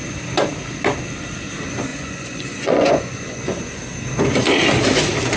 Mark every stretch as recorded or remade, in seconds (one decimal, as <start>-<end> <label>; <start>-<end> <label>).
0.0-1.9 recorded; 1.9-3.7 remade; 3.7-5.4 recorded